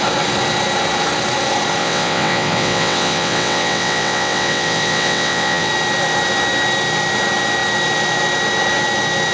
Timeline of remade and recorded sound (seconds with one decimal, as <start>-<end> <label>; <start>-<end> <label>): 0.0-1.8 recorded; 1.8-5.7 remade; 5.7-9.3 recorded